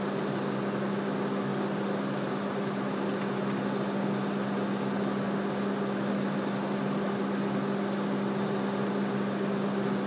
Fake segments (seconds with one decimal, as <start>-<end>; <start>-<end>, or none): none